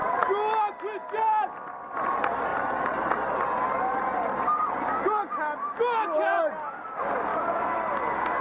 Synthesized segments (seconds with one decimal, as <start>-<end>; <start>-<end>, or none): 2.5-3.0

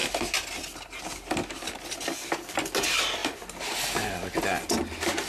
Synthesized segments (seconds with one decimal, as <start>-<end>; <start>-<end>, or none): none

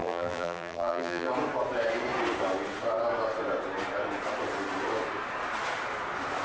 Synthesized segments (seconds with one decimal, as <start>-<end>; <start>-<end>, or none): 0.0-1.3